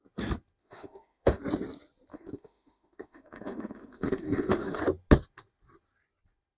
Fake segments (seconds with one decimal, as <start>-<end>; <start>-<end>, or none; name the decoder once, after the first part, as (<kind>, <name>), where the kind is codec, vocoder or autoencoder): 0.6-1.4 (autoencoder, DAC-VAE); 2.1-4.8